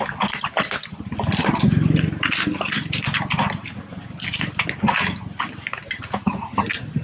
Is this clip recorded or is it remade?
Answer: recorded